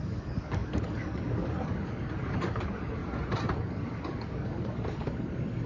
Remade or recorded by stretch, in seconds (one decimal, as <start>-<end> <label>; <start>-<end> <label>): 0.0-3.0 remade; 3.0-3.7 recorded; 3.7-5.7 remade